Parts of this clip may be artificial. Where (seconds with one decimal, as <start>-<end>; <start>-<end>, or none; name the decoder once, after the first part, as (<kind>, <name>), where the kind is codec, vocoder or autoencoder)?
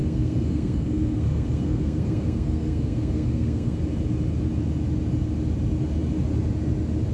0.0-3.8 (codec, SNAC)